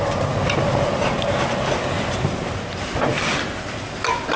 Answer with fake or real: real